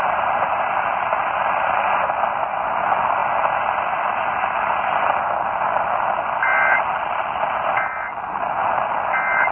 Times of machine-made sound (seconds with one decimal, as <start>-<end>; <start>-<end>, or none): none